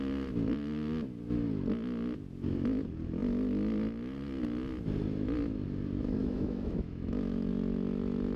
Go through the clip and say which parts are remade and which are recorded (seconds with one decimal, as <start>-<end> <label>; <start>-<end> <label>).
0.0-6.2 recorded; 6.2-7.5 remade; 7.5-8.4 recorded